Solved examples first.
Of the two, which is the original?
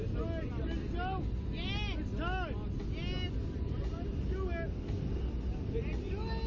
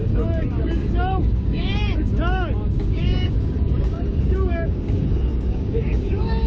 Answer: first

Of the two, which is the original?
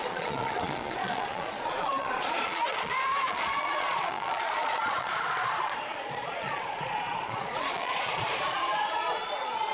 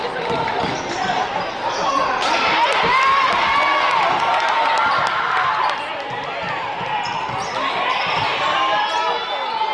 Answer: second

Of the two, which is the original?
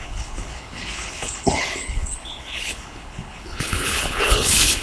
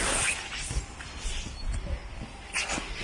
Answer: second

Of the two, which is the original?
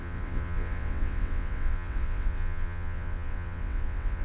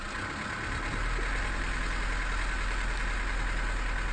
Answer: second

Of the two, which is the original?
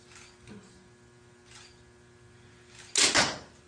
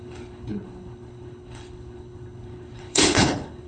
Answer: first